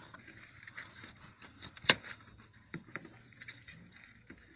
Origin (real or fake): fake